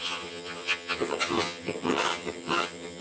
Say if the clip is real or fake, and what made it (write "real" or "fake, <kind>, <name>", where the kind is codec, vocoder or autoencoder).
fake, vocoder, HiFi-GAN